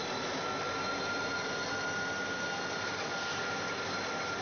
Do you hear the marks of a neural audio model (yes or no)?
no